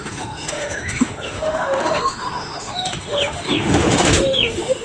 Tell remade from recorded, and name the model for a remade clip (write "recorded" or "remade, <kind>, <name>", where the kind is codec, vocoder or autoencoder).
remade, autoencoder, DAC-VAE